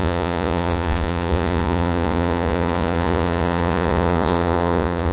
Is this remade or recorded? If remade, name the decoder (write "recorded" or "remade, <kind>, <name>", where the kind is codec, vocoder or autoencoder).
remade, vocoder, Vocos